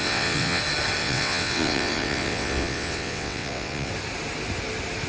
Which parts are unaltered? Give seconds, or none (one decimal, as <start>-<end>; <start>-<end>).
0.6-1.0; 3.9-5.1

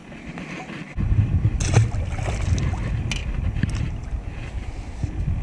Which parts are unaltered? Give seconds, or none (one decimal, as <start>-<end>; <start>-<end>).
0.0-5.4

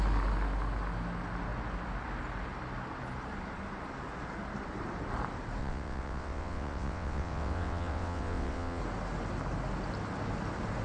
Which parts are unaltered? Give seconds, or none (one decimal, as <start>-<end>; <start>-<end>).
0.0-5.6; 8.8-10.8

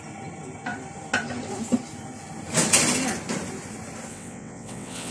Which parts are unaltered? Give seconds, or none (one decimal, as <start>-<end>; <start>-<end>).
0.0-4.1